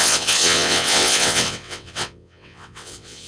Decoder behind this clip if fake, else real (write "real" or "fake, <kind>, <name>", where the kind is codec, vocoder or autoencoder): fake, vocoder, WaveNeXt